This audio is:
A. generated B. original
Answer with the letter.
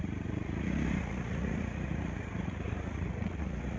A